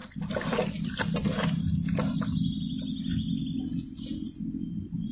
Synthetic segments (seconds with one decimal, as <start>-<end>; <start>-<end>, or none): none

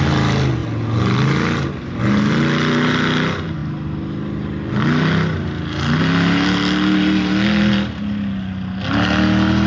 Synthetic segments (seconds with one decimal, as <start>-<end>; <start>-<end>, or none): none

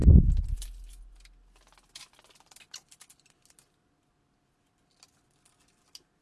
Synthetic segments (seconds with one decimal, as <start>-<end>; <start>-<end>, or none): none

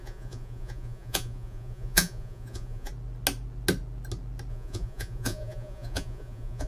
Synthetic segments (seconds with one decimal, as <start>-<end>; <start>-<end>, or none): 0.0-2.9; 4.5-6.7